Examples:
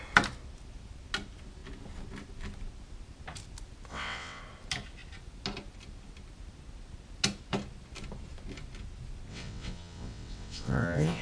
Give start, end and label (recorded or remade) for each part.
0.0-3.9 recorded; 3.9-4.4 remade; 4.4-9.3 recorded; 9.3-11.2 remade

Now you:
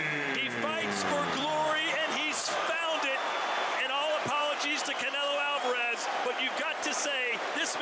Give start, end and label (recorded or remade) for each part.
0.0-7.8 recorded

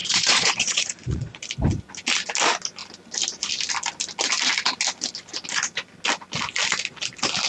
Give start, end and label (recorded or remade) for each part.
0.0-1.4 remade; 1.4-7.5 recorded